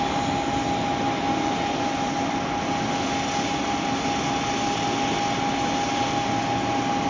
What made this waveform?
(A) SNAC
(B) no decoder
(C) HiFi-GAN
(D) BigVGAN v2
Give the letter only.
B